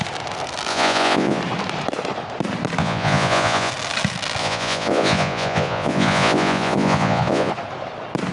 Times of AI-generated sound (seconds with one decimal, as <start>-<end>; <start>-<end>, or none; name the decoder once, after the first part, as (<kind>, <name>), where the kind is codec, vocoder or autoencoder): 0.7-1.4 (vocoder, Vocos); 2.8-3.7; 4.4-7.5

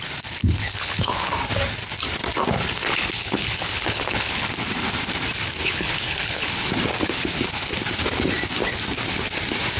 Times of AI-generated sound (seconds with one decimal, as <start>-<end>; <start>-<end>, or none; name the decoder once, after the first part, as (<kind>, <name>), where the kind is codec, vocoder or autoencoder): 0.4-1.3 (codec, HILCodec); 2.8-4.5; 5.6-6.7

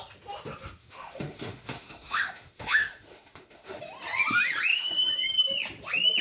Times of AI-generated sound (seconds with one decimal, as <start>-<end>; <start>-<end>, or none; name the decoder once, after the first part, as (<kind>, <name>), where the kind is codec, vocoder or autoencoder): 0.8-3.8 (autoencoder, DAC-VAE); 4.7-5.3